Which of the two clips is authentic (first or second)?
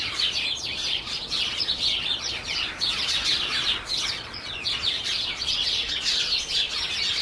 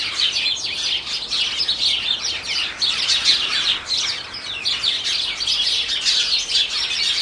second